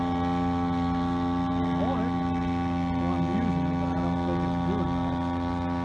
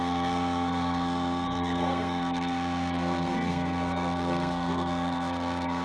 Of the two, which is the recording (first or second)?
first